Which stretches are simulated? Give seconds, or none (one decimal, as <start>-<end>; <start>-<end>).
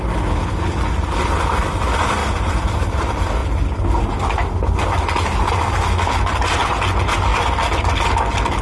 2.2-3.0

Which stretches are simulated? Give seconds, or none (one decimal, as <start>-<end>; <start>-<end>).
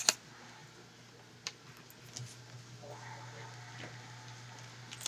none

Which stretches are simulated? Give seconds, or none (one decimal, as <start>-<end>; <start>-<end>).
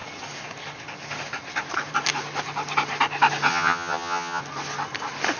3.5-4.4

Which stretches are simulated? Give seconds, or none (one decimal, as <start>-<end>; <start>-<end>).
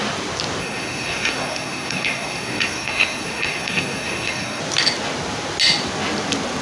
0.6-4.6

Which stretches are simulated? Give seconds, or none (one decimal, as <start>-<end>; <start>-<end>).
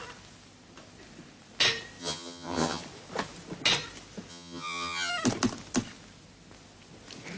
2.0-2.8; 4.3-5.1